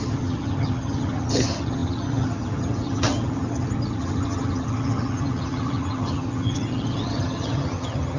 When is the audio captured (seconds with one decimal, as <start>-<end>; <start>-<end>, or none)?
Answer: none